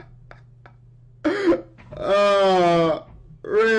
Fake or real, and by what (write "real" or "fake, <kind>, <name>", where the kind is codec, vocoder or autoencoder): real